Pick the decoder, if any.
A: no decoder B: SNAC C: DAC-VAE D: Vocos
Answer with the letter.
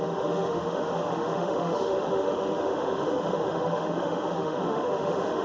C